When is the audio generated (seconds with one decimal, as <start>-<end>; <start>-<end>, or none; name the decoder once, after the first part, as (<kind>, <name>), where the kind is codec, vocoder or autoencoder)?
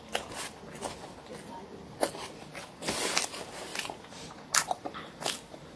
none